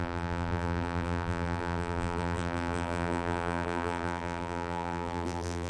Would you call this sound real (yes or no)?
no